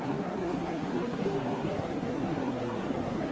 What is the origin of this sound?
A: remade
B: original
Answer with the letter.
A